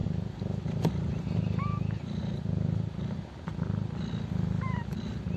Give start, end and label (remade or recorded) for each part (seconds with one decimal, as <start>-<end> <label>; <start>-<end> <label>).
0.0-5.4 recorded